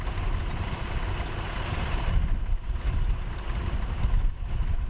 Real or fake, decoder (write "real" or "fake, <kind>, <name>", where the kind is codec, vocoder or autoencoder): real